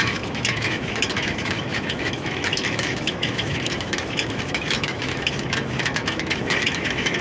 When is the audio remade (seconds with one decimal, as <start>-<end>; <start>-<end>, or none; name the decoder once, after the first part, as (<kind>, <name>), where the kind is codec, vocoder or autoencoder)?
0.0-7.2 (autoencoder, DAC-VAE)